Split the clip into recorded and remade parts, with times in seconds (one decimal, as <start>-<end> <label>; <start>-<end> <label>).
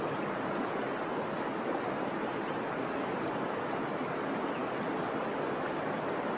0.0-6.4 recorded